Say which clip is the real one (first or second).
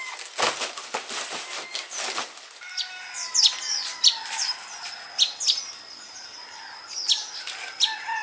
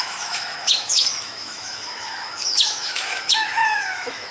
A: first